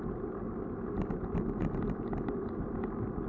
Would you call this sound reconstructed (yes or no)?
no